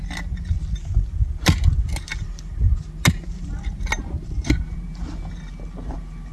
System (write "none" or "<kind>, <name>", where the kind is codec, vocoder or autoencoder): none